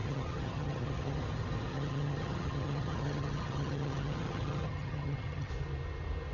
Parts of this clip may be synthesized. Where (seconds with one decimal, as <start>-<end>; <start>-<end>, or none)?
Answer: 0.0-1.2; 1.7-5.5